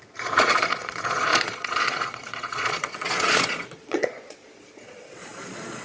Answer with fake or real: fake